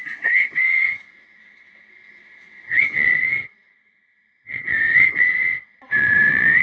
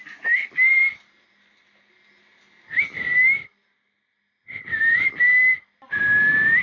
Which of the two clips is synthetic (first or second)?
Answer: first